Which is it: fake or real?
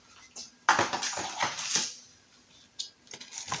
real